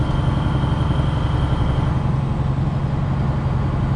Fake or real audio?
real